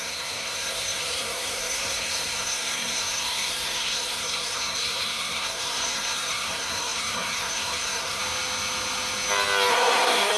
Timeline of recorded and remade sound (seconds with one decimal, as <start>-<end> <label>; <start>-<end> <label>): 0.0-8.2 remade; 8.2-9.7 recorded; 9.7-10.4 remade